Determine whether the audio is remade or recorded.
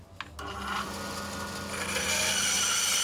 recorded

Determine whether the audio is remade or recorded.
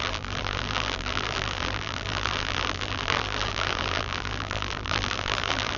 remade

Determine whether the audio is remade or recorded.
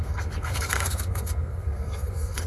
remade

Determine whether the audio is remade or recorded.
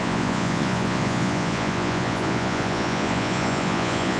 remade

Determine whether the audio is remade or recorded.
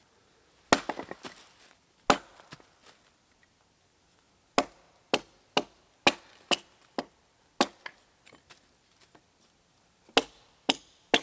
recorded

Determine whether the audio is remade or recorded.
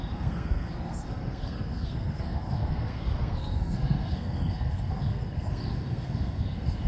remade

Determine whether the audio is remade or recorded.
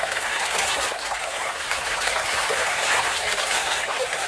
remade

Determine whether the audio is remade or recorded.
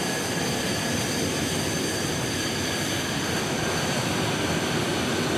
recorded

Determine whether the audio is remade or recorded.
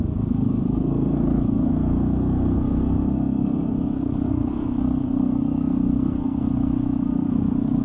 remade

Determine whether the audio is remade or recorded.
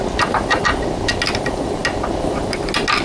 recorded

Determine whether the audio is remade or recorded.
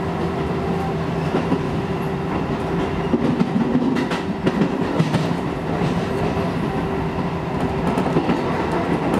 recorded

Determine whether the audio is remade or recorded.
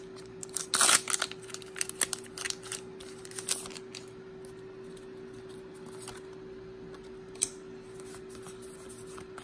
recorded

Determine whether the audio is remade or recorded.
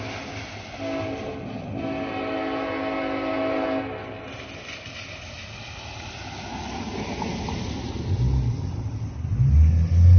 recorded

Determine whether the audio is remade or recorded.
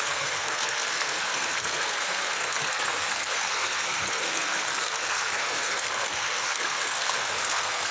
remade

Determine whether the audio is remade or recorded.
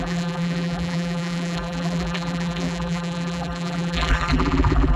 remade